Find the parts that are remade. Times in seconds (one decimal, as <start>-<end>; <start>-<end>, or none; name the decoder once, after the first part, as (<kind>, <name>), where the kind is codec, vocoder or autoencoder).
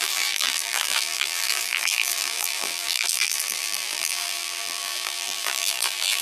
0.0-6.2 (vocoder, BigVGAN v2)